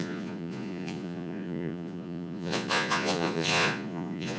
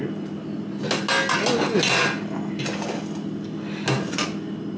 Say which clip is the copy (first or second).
first